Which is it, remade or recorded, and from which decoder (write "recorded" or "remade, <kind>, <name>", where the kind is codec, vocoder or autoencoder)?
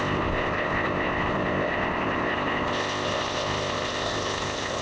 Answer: remade, codec, ZipCodec